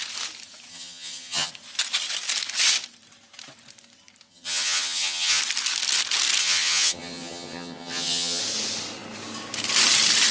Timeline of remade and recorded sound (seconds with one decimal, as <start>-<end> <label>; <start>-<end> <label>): 0.0-0.7 recorded; 0.7-1.5 remade; 1.5-4.3 recorded; 4.3-5.4 remade; 5.4-6.4 recorded; 6.4-8.4 remade; 8.4-10.3 recorded